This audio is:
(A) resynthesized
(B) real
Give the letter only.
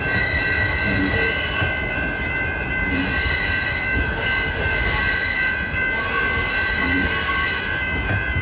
B